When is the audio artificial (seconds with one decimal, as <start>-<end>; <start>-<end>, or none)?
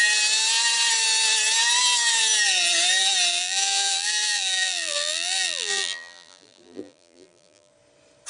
3.3-7.7